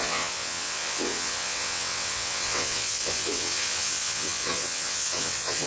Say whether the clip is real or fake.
fake